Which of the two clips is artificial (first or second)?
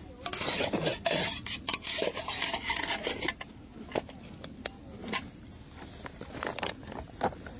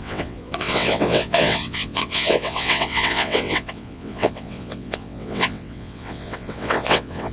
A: second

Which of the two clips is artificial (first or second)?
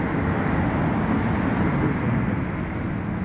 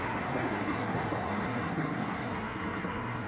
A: second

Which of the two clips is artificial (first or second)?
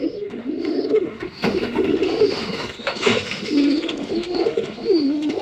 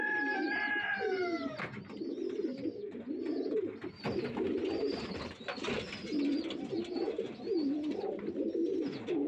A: first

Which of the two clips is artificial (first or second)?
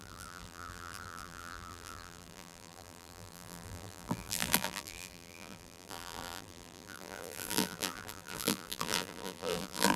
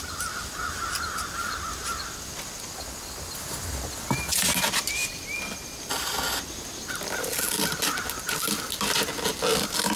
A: first